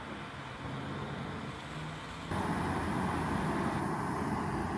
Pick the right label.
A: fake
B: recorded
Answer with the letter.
B